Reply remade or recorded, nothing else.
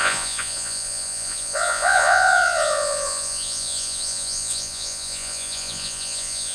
remade